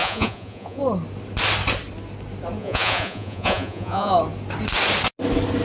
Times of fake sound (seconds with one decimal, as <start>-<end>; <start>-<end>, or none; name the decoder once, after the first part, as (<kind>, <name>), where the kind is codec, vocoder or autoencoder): 0.0-0.8 (vocoder, Vocos); 2.6-4.1